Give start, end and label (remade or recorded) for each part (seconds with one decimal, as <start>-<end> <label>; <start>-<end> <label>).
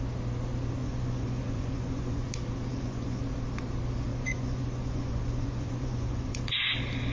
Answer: 0.0-0.8 recorded; 0.8-2.2 remade; 2.2-2.7 recorded; 2.7-3.2 remade; 3.2-4.1 recorded; 4.1-6.4 remade; 6.4-7.1 recorded